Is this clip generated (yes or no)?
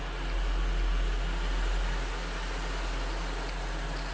no